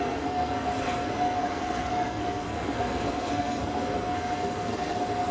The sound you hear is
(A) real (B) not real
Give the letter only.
B